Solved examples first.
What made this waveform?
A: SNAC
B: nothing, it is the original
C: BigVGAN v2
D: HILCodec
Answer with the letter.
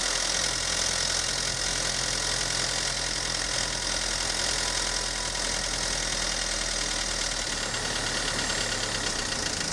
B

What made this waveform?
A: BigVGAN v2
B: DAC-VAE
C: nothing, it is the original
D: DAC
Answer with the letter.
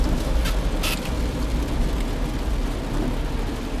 C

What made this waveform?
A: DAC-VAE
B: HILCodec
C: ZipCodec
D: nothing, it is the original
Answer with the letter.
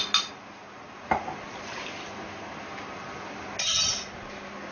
D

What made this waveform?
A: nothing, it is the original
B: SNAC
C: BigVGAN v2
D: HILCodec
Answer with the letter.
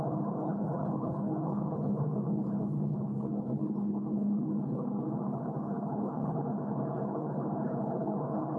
D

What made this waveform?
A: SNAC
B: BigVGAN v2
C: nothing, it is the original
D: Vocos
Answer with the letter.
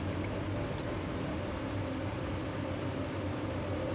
C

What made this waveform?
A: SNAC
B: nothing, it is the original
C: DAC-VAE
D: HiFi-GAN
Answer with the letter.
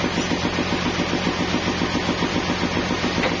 B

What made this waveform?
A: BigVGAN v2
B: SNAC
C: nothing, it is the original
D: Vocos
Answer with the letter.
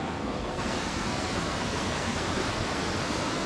B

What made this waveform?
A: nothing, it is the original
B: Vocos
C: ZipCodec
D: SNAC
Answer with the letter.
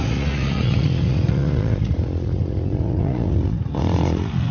B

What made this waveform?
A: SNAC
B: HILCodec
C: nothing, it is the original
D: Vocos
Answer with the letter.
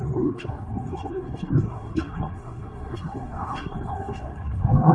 A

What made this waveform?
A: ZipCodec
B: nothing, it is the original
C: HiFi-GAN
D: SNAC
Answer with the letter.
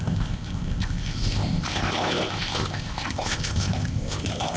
A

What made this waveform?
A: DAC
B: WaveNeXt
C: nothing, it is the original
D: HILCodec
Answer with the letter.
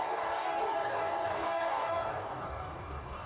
A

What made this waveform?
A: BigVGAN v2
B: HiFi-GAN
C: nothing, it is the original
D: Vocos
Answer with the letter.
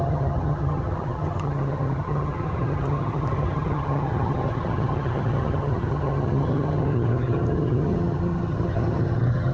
B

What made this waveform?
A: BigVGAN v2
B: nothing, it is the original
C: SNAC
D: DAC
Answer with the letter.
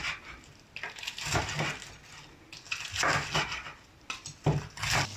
B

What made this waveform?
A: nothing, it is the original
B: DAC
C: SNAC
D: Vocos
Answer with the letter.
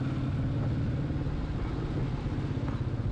A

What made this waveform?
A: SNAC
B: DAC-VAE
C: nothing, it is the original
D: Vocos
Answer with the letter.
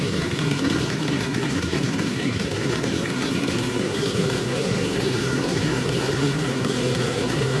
A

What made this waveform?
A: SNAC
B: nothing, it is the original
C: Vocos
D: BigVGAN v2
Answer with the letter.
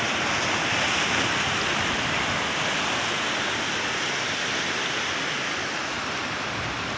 B